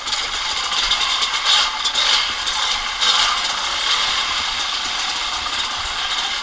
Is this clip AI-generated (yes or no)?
no